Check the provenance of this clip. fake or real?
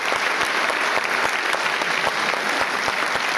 real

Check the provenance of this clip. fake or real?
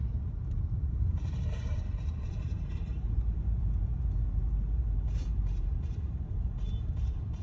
fake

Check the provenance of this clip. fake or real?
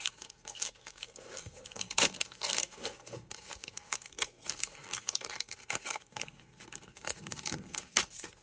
fake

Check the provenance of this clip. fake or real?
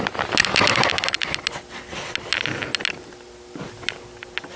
real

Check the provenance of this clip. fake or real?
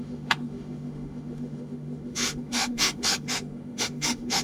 fake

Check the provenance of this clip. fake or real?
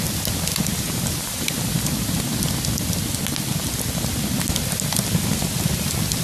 real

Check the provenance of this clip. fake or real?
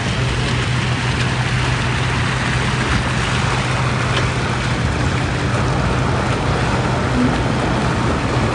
real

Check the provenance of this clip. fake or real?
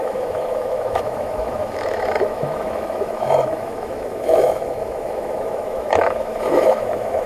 fake